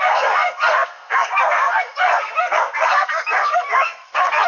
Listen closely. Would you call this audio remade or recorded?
remade